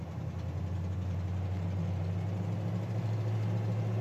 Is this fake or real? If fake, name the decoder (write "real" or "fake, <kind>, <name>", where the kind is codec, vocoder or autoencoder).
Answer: real